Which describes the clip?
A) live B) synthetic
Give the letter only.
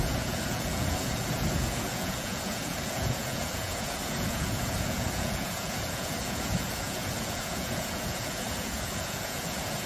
B